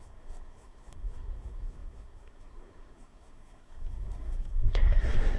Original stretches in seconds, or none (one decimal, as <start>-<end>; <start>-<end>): none